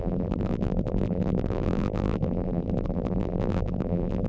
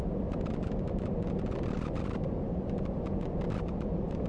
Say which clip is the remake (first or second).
first